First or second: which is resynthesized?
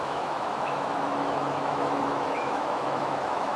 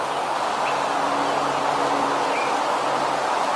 first